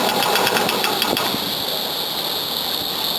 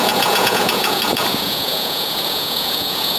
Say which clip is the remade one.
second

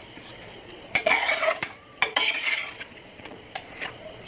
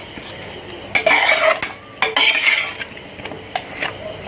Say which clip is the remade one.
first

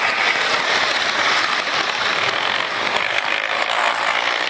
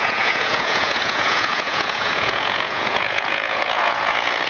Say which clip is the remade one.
second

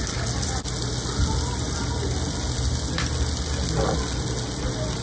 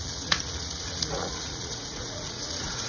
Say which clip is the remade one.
second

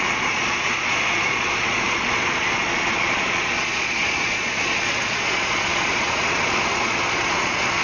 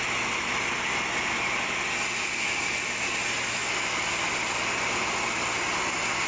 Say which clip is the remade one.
first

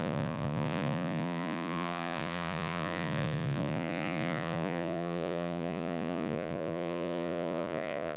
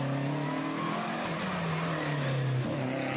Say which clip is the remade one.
first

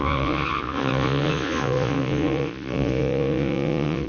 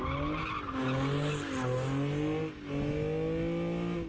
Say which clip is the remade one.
first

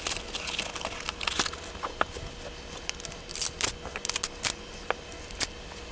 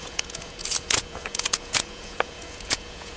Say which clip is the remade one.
second